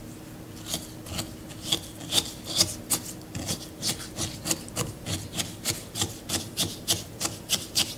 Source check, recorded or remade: recorded